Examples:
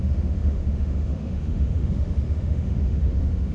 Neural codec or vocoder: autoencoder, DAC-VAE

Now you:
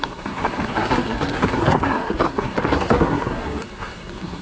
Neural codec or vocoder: codec, SNAC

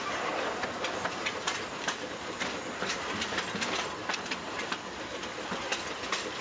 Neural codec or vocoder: none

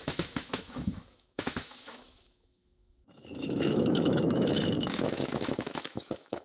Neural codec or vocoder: autoencoder, DAC-VAE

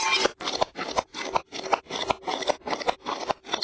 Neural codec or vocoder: none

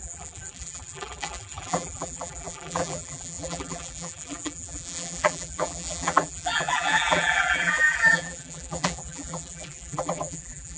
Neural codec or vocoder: vocoder, BigVGAN v2